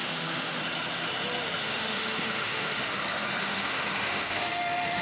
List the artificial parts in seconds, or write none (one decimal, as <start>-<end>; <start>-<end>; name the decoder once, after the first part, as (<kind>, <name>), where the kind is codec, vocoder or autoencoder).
0.0-0.6 (autoencoder, DAC-VAE); 1.6-3.0; 3.4-5.0